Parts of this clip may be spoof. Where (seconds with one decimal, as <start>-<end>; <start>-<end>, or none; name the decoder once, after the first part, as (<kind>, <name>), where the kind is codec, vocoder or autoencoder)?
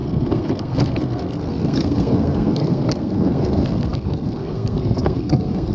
0.0-5.7 (codec, SNAC)